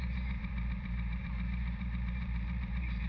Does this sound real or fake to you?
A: fake